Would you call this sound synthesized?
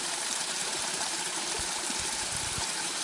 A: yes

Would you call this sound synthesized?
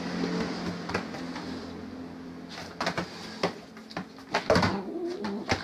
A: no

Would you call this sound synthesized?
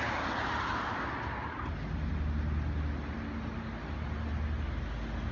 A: no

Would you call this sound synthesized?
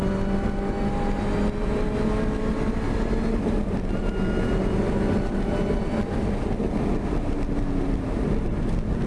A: no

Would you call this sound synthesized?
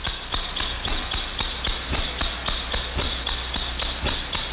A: no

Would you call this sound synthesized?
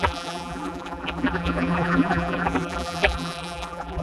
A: yes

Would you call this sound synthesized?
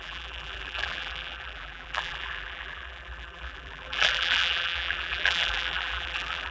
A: yes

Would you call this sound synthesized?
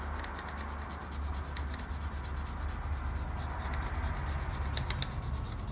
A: no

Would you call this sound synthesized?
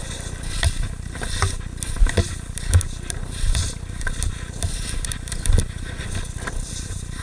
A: no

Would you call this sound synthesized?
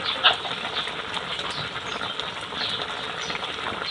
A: no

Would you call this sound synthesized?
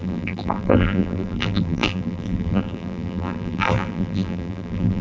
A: yes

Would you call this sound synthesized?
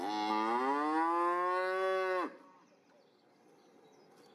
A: no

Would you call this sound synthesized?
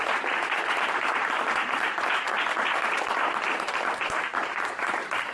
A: yes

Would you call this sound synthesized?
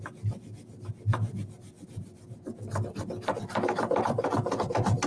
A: no